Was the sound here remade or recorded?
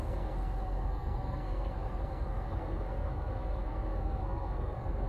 remade